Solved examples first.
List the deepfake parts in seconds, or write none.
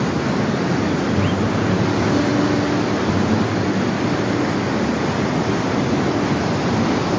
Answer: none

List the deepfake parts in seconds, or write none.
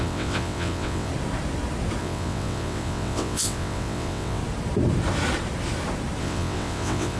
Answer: 0.0-1.1 (vocoder, WaveNeXt); 2.0-4.4; 6.2-7.2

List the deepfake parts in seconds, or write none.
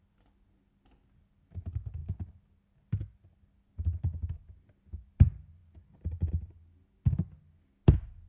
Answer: none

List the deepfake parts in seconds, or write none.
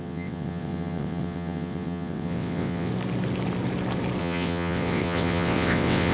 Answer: 0.0-2.9 (vocoder, WaveNeXt); 4.2-6.1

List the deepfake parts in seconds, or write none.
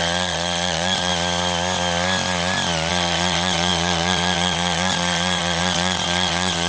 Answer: 0.0-1.1 (vocoder, WaveNeXt); 2.9-6.7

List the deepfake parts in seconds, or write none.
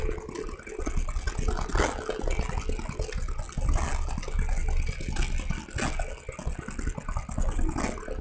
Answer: none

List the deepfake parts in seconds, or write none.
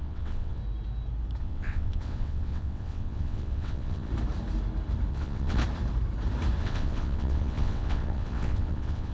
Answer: 0.0-0.6 (vocoder, WaveNeXt); 1.4-4.1; 5.1-5.6; 6.6-9.1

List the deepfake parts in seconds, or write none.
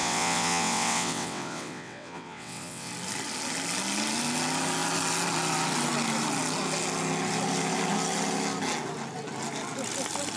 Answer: 0.0-2.9 (vocoder, WaveNeXt)